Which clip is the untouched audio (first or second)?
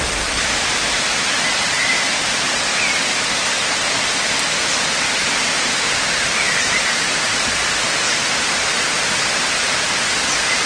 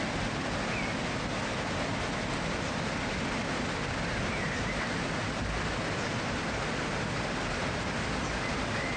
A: second